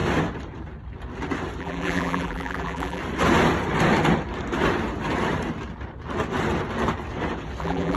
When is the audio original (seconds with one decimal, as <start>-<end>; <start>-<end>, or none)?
0.0-1.6; 3.0-7.6